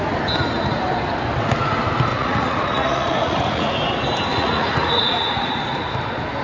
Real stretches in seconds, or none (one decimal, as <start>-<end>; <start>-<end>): 0.0-2.1; 3.7-4.3; 5.9-6.4